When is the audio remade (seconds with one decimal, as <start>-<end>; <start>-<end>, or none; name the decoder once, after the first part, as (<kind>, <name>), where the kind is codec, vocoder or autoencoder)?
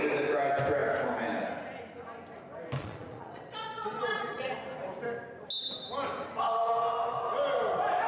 2.8-4.5 (vocoder, Vocos)